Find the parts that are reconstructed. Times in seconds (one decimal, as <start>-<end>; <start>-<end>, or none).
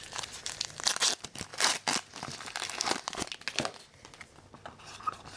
none